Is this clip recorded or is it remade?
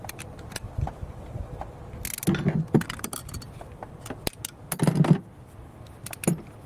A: recorded